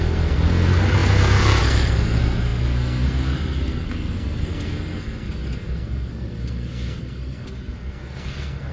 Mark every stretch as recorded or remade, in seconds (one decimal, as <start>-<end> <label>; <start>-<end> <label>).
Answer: 0.0-8.7 remade